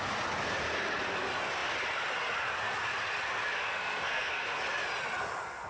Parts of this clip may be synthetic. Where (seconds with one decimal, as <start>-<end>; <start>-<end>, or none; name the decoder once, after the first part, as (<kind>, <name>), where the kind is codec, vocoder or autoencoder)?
3.7-4.6 (codec, SNAC)